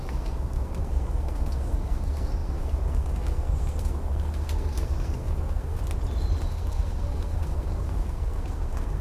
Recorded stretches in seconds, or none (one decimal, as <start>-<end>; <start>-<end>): 5.8-6.5